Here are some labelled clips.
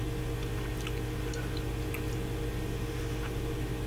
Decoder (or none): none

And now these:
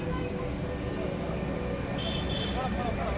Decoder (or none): none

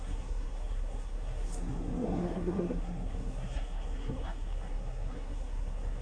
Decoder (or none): codec, SNAC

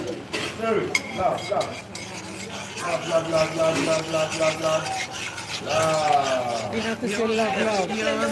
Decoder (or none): none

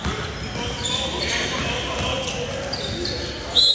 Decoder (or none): none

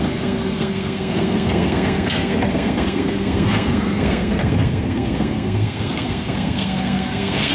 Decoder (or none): codec, SNAC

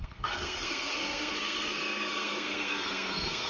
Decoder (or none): codec, SNAC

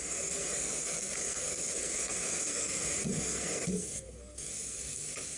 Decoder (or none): codec, SNAC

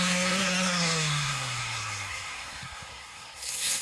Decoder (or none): codec, SNAC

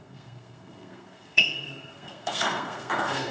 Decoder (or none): codec, SNAC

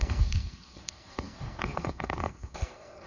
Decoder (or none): codec, SNAC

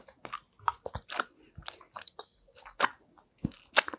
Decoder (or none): none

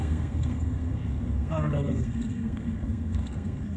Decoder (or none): codec, SNAC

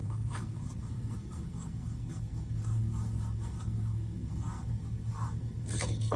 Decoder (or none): codec, SNAC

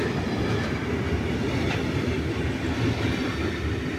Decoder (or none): none